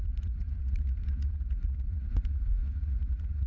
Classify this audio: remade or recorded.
remade